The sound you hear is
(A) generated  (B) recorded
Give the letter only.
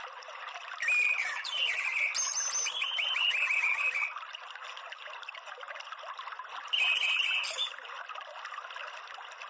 B